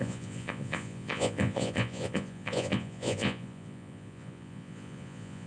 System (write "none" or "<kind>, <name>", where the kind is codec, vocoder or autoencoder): vocoder, Vocos